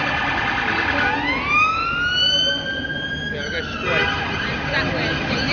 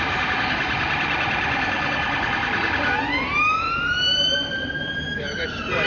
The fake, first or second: second